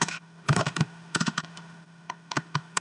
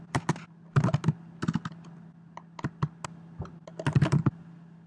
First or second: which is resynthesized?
first